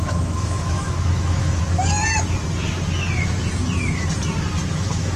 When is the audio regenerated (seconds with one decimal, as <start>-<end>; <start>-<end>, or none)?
0.0-1.6; 4.7-5.2